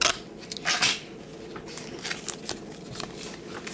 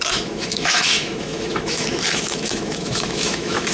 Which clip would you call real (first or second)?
first